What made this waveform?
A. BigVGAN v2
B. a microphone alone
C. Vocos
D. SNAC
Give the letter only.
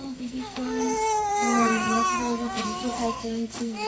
D